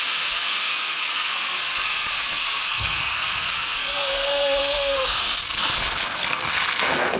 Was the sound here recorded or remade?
remade